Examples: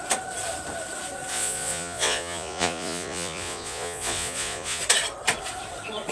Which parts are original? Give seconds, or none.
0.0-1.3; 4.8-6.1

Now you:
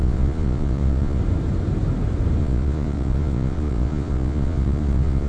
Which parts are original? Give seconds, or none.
1.2-2.4

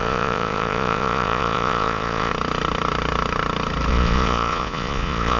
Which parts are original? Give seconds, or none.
2.3-3.9